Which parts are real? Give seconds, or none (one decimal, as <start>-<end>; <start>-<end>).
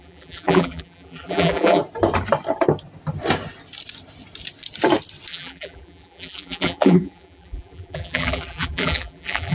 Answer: 1.8-5.3